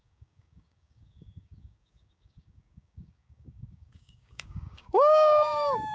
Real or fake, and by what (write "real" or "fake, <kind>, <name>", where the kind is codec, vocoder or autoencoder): fake, codec, DAC